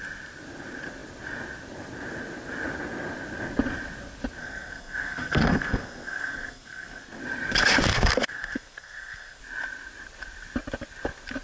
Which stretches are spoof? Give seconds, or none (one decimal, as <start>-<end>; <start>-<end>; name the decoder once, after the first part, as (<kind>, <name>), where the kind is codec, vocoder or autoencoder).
4.4-7.2 (codec, SNAC); 7.9-9.4